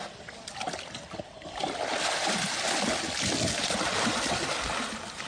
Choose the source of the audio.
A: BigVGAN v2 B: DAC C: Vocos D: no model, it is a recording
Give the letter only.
D